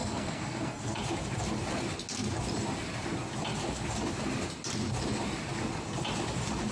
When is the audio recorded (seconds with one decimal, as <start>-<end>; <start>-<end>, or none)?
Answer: 1.0-6.7